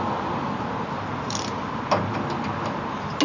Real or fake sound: real